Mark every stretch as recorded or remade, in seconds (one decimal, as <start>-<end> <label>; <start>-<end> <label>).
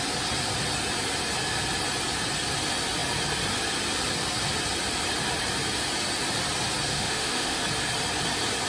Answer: 0.0-6.9 recorded; 6.9-7.6 remade; 7.6-8.7 recorded